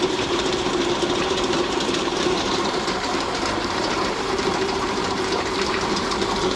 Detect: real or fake fake